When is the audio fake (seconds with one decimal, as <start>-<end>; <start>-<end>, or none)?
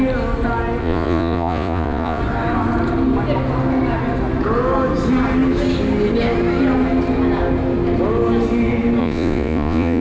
0.8-2.2; 9.0-10.0